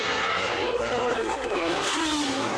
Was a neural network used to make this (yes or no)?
yes